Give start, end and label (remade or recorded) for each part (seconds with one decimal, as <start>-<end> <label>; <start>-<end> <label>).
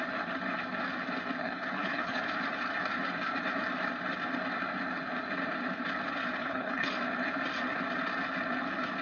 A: 0.0-1.4 recorded; 1.4-2.2 remade; 2.2-6.4 recorded; 6.4-6.9 remade; 6.9-9.0 recorded